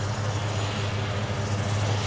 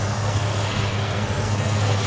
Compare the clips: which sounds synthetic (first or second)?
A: second